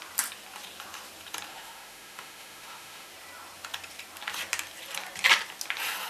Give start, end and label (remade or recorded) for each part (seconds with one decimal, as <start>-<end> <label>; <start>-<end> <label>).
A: 0.0-1.5 recorded; 1.5-3.1 remade; 3.1-6.1 recorded